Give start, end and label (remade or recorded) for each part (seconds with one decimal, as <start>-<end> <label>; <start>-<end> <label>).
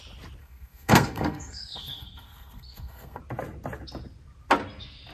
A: 0.0-0.4 recorded; 0.4-3.2 remade; 3.2-5.1 recorded